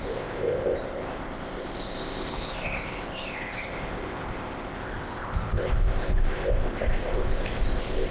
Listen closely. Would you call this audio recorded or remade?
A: remade